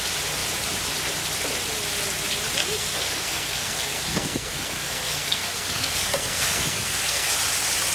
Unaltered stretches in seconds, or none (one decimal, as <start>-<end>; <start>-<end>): 0.0-2.6; 7.3-7.9